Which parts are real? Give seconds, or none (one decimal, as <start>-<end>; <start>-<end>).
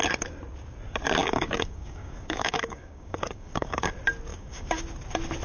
0.0-1.2; 3.9-4.3; 4.8-5.4